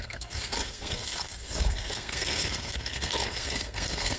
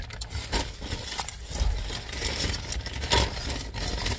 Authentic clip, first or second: second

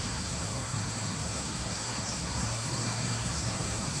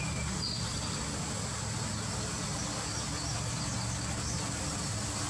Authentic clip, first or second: second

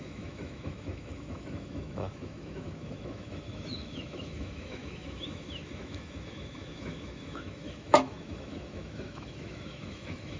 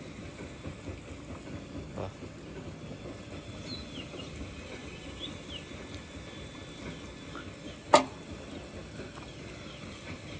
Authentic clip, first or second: second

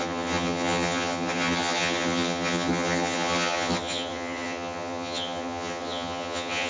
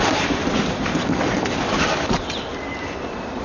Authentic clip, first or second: second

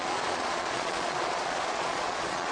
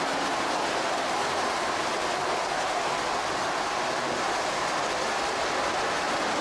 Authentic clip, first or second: second